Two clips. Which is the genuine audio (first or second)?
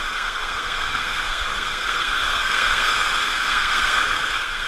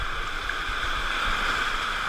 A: second